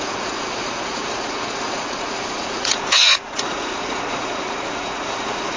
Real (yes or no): no